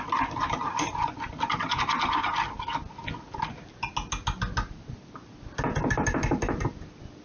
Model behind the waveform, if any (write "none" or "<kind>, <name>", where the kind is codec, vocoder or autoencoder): none